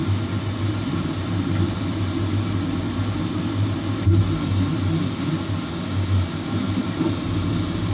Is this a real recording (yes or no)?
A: yes